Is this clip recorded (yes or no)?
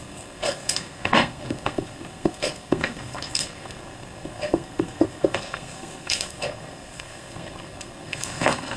no